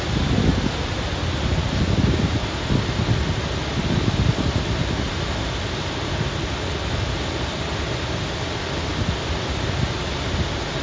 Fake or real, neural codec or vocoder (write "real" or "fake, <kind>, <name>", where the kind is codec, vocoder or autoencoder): real